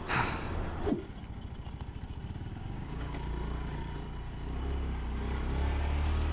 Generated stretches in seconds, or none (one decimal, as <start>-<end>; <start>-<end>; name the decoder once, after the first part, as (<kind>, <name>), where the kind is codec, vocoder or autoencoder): 2.5-3.2 (codec, DAC)